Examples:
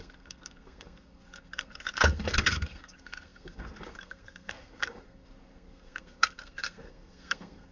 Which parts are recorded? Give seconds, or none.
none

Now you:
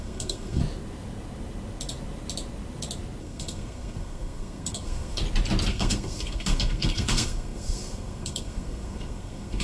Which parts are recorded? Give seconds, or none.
0.6-3.2; 5.2-5.7

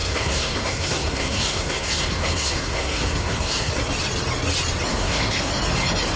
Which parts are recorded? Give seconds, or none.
3.7-4.9; 5.5-6.2